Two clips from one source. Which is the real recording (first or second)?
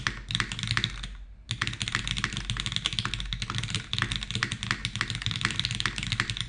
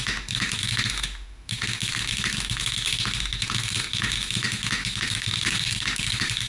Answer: first